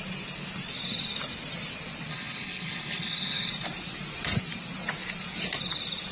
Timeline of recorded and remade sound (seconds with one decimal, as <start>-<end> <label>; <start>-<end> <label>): 0.0-2.1 recorded; 2.1-3.5 remade; 3.5-6.1 recorded